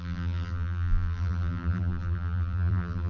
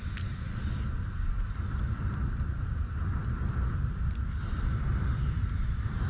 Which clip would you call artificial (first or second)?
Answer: first